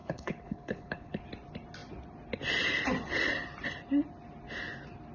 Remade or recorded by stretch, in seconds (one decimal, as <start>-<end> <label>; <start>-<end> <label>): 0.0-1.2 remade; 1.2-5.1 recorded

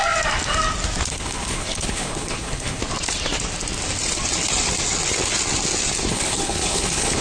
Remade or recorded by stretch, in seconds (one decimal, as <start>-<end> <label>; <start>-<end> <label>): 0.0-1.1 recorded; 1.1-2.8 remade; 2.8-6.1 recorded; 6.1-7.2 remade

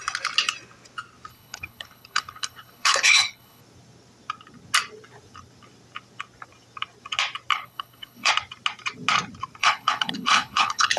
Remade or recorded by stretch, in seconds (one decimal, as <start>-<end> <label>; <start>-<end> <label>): 0.0-1.3 recorded; 1.3-3.6 remade; 3.6-7.5 recorded; 7.5-8.3 remade; 8.3-9.6 recorded; 9.6-11.0 remade

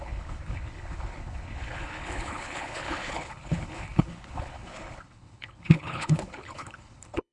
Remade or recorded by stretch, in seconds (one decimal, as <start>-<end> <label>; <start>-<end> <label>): 0.0-7.3 remade

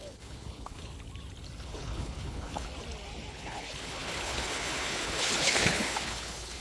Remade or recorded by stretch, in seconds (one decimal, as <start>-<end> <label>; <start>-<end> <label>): 0.0-0.9 remade; 0.9-1.6 recorded; 1.6-2.7 remade; 2.7-3.3 recorded; 3.3-6.6 remade

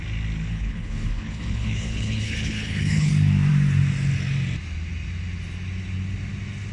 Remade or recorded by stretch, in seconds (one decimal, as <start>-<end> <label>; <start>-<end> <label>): 0.0-0.5 recorded; 0.5-3.1 remade; 3.1-6.7 recorded